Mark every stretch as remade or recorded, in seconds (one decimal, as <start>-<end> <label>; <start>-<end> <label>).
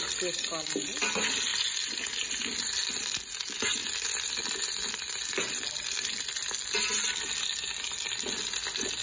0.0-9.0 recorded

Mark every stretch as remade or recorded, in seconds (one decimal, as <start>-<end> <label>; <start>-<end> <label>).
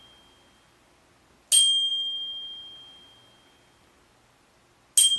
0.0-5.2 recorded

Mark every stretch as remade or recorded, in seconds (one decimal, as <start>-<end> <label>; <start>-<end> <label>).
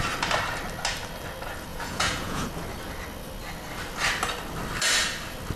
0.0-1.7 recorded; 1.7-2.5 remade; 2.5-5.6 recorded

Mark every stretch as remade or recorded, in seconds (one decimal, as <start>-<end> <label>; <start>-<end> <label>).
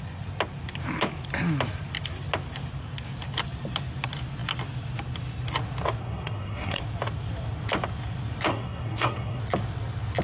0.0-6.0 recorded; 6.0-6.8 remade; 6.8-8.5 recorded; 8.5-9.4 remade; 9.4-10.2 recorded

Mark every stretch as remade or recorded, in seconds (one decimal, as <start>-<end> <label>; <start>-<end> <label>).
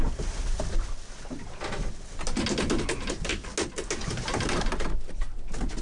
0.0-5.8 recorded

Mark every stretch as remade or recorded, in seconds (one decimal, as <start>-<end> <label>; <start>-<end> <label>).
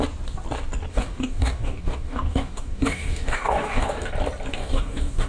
0.0-0.9 recorded; 0.9-4.1 remade; 4.1-4.5 recorded; 4.5-5.3 remade